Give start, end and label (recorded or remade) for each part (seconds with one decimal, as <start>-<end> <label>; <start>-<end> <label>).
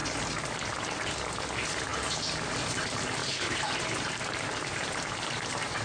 0.0-3.2 recorded; 3.2-5.8 remade